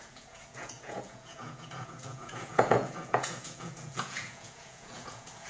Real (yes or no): no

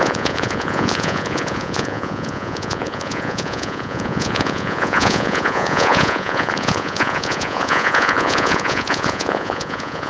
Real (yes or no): no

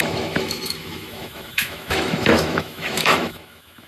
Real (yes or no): no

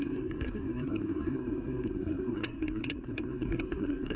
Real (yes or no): no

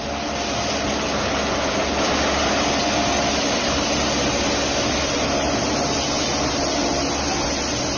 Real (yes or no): yes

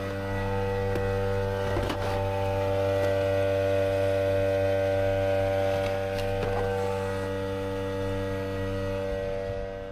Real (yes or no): yes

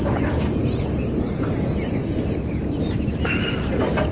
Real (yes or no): yes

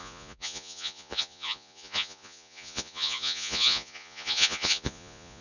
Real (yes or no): no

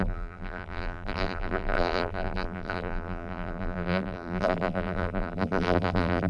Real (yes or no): no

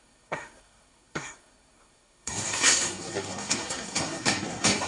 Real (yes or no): no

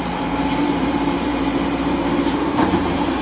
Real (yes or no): no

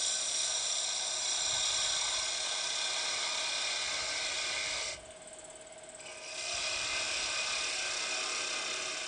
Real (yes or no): yes